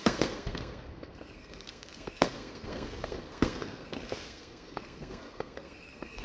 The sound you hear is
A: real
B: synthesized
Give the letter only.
B